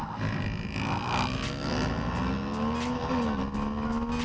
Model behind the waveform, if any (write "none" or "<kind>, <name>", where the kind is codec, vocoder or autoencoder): none